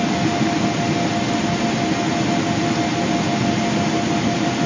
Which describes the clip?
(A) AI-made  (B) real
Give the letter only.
B